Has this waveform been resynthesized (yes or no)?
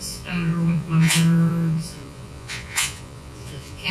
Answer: yes